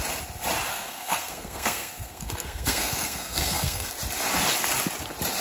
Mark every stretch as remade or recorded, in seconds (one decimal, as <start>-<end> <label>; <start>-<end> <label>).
0.0-0.7 recorded; 0.7-3.9 remade; 3.9-5.4 recorded